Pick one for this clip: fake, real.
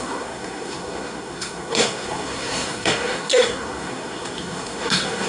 fake